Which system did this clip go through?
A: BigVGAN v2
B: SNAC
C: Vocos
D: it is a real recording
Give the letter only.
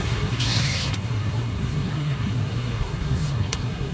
B